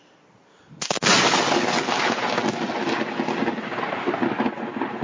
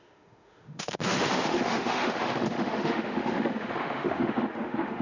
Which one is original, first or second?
first